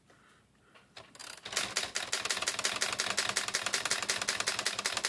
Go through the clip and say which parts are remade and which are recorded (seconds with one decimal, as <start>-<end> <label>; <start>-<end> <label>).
0.0-5.1 recorded